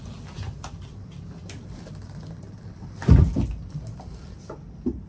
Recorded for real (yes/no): no